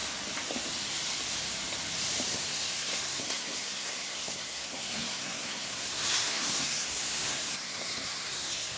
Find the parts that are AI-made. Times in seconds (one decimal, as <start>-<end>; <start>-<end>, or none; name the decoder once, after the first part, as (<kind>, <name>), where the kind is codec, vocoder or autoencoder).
2.3-8.8 (codec, SNAC)